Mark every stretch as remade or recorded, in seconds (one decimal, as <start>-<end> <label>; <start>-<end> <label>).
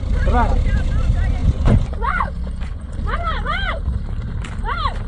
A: 0.0-1.4 recorded; 1.4-2.9 remade; 2.9-5.1 recorded